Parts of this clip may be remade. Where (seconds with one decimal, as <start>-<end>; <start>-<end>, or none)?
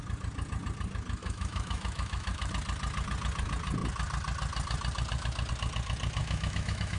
1.2-2.5; 6.2-7.0